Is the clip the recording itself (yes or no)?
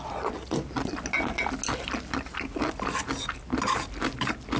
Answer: yes